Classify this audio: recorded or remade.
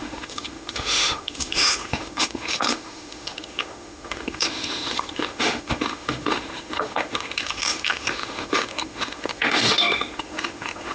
remade